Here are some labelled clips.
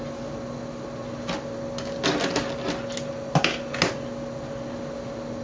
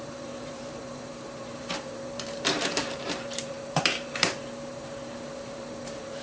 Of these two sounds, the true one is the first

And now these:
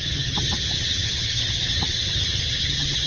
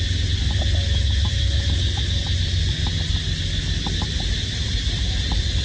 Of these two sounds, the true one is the second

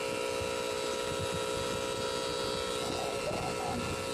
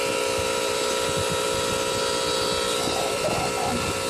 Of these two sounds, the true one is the first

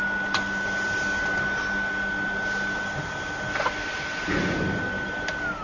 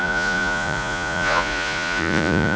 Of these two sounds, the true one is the first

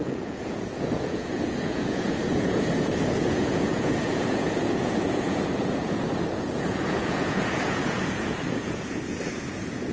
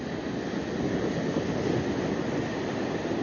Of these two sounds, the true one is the second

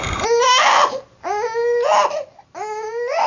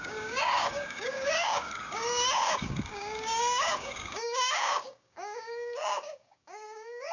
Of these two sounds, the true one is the first